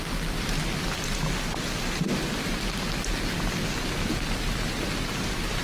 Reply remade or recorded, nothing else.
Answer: recorded